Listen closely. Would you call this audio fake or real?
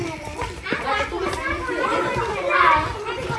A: real